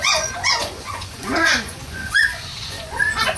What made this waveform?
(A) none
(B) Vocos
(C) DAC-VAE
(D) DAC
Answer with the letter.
B